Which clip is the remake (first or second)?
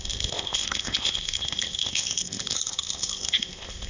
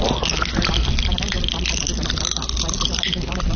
first